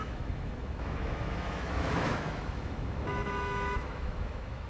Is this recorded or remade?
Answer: remade